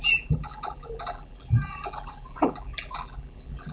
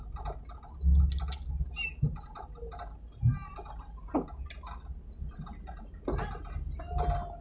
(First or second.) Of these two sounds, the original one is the second